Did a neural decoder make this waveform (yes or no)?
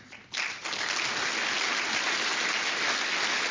no